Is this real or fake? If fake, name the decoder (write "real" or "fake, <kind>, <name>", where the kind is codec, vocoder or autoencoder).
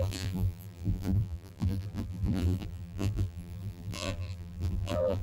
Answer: fake, vocoder, BigVGAN v2